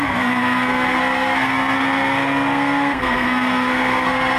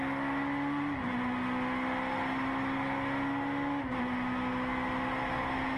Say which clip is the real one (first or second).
second